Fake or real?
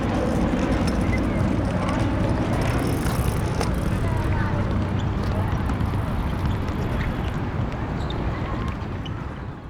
real